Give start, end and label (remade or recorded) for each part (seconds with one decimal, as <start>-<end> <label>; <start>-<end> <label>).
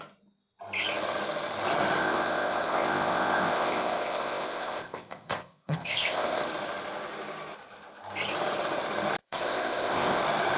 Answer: 0.0-2.0 recorded; 2.0-6.4 remade; 6.4-9.2 recorded; 9.2-10.2 remade; 10.2-10.6 recorded